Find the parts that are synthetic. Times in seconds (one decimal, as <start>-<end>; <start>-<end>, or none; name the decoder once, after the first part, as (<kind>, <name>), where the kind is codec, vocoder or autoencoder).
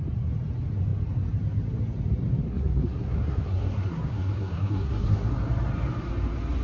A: 2.4-5.3 (codec, SNAC)